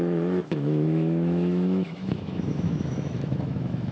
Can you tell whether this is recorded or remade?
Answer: remade